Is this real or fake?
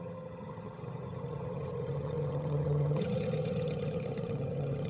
fake